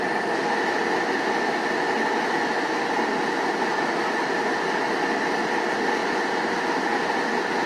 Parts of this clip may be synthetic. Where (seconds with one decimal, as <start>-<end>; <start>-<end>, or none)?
none